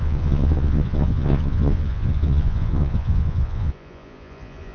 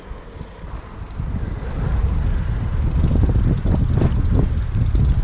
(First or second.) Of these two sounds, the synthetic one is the first